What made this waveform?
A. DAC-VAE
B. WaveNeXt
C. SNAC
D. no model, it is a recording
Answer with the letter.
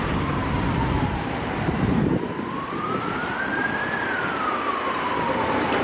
D